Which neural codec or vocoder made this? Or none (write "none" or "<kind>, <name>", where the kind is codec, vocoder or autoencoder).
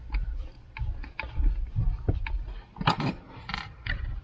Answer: vocoder, BigVGAN v2